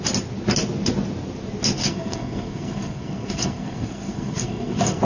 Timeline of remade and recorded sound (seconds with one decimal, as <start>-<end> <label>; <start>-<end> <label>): 0.0-1.8 recorded; 1.8-5.0 remade